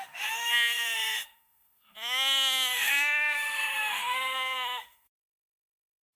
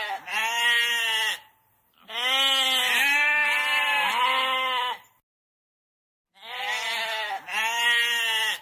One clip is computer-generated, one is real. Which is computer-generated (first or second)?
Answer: first